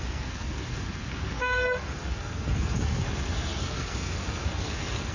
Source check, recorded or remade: remade